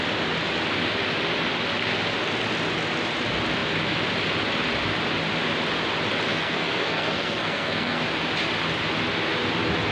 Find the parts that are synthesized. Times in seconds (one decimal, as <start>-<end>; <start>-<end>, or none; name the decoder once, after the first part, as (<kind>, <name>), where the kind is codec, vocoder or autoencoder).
6.3-8.0 (codec, SNAC)